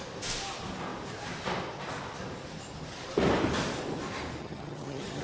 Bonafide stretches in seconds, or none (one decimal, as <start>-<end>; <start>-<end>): 0.0-4.4